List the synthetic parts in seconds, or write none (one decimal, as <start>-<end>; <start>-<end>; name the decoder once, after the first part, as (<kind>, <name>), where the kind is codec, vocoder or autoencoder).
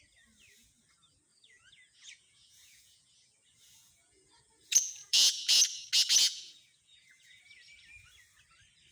1.3-5.6 (vocoder, Vocos); 6.3-7.4